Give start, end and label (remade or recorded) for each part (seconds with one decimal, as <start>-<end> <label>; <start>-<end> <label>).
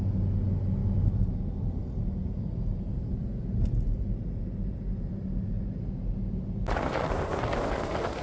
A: 0.0-8.2 recorded